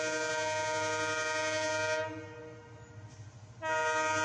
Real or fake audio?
real